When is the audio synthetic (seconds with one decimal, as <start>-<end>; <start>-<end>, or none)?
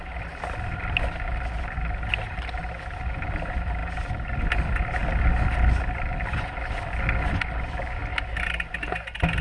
none